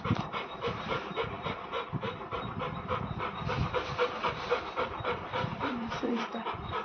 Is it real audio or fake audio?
fake